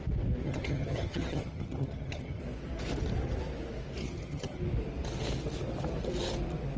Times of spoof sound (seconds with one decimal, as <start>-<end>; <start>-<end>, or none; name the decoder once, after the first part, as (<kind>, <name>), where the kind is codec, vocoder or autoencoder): 0.4-2.4 (vocoder, HiFi-GAN); 4.0-4.6